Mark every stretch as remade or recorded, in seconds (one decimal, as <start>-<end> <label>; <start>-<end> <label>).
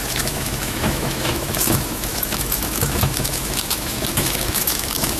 0.0-5.2 remade